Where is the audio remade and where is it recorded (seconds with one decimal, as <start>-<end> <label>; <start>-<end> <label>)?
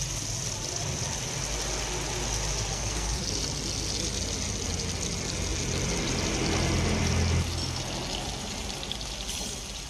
0.0-2.7 recorded; 2.7-3.2 remade; 3.2-9.9 recorded